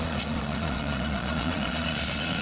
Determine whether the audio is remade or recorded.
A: remade